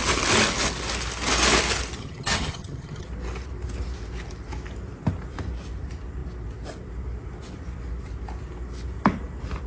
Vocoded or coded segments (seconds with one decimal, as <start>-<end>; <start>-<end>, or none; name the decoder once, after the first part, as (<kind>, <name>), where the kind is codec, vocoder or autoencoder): 2.0-3.1 (vocoder, HiFi-GAN)